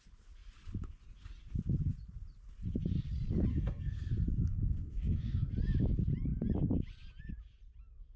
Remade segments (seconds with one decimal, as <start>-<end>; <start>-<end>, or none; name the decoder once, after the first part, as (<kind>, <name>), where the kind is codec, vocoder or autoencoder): 3.5-4.1 (codec, SNAC); 4.5-5.5